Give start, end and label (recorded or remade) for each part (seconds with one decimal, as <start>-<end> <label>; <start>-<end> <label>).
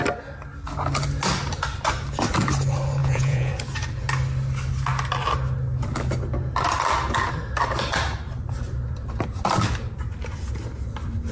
0.0-3.0 recorded; 3.0-3.5 remade; 3.5-11.3 recorded